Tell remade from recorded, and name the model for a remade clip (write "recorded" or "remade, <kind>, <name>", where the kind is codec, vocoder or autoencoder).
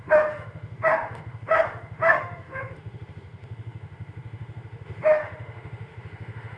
remade, autoencoder, DAC-VAE